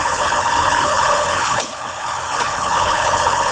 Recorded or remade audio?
remade